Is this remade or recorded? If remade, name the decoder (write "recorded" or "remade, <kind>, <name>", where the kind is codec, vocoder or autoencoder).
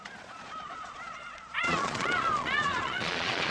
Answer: remade, vocoder, Vocos